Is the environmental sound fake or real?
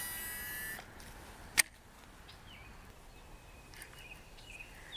real